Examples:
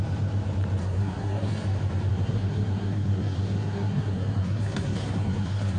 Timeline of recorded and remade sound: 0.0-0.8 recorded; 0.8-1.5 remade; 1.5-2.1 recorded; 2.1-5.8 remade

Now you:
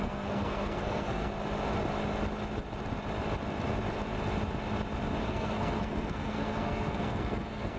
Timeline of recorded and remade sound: 0.0-1.3 remade; 1.3-5.2 recorded; 5.2-7.8 remade

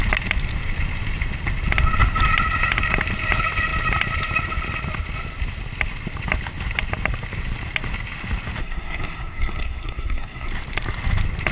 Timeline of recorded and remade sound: 0.0-8.6 recorded; 8.6-10.5 remade; 10.5-11.5 recorded

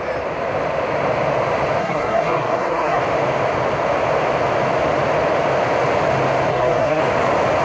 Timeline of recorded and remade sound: 0.0-1.8 recorded; 1.8-3.0 remade; 3.0-6.5 recorded; 6.5-7.0 remade; 7.0-7.6 recorded

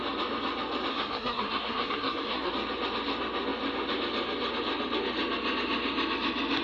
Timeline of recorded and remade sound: 0.0-0.9 recorded; 0.9-2.5 remade; 2.5-6.6 recorded